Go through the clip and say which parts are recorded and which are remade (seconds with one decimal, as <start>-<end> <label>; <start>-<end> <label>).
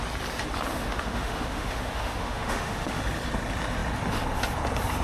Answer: 0.0-0.7 recorded; 0.7-3.0 remade; 3.0-5.0 recorded